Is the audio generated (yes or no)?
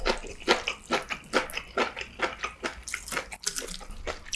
no